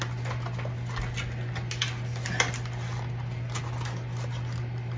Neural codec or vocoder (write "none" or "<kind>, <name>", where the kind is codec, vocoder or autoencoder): none